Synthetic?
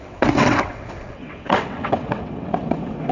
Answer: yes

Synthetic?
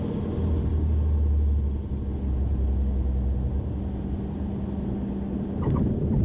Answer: no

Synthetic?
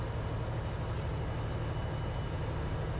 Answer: no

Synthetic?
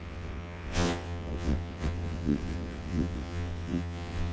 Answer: yes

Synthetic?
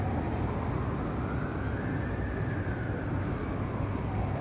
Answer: no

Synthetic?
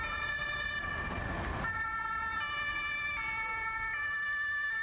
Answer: no